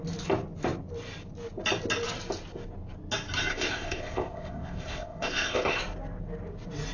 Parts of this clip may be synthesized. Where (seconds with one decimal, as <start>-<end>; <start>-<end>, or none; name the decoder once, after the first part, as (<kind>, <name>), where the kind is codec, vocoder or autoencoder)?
3.5-5.8 (codec, ZipCodec)

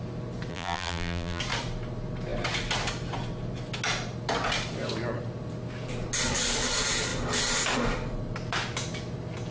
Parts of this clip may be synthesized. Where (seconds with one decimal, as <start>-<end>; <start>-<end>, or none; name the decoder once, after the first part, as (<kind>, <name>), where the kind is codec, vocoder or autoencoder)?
0.5-1.4 (vocoder, BigVGAN v2)

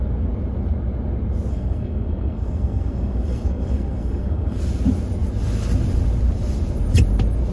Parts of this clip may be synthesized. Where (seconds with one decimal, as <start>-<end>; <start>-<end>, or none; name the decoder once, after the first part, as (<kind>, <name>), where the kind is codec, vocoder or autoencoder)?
1.5-4.6 (codec, SNAC)

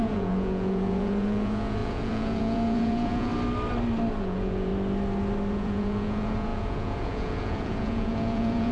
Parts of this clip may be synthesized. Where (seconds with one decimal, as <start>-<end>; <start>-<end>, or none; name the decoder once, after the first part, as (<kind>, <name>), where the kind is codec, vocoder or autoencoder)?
0.0-3.3 (vocoder, Vocos); 4.2-4.7; 5.5-8.7